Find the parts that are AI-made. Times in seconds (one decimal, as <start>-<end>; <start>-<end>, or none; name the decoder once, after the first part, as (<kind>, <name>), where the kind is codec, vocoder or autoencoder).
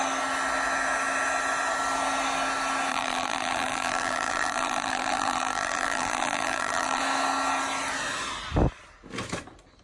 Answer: 2.9-7.0 (vocoder, BigVGAN v2)